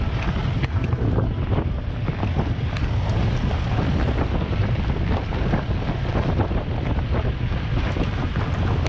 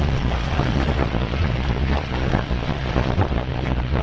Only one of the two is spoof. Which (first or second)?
second